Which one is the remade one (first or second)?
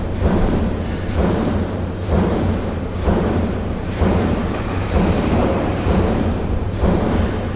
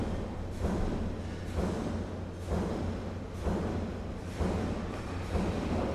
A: first